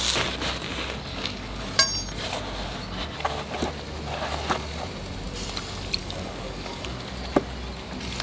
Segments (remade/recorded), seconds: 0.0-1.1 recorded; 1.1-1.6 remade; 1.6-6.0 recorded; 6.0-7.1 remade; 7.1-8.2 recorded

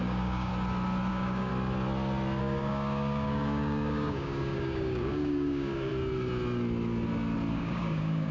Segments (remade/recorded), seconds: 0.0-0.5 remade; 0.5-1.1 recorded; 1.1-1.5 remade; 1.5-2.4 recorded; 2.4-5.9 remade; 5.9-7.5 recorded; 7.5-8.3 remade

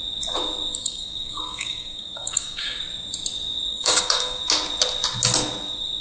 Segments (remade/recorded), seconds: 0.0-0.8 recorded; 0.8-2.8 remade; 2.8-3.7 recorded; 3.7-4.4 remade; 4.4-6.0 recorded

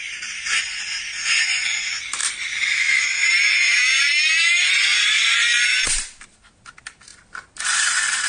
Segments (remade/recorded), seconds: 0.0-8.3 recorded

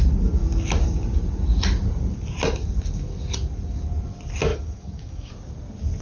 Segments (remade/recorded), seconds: 0.0-4.5 recorded; 4.5-5.3 remade; 5.3-6.0 recorded

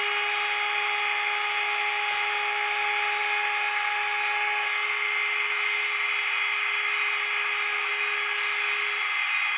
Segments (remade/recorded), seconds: 0.0-9.6 recorded